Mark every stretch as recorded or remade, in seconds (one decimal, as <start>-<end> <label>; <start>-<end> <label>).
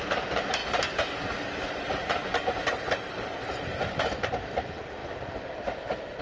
0.0-6.2 recorded